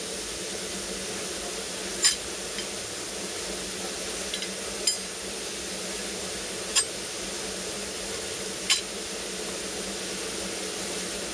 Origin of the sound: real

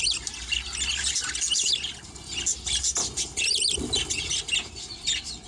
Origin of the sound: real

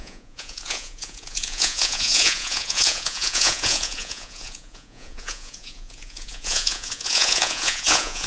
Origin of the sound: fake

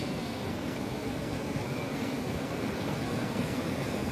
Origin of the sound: fake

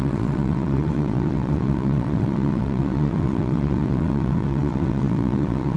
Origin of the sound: fake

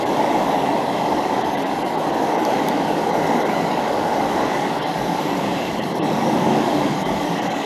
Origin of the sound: fake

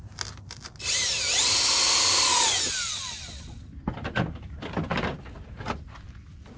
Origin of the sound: real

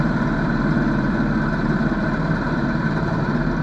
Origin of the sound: fake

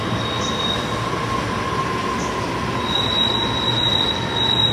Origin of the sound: real